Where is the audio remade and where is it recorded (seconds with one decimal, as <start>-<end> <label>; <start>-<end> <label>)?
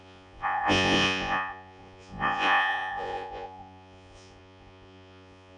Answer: 0.0-5.6 remade